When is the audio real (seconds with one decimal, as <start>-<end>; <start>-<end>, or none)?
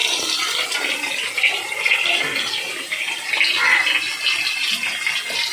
3.3-5.5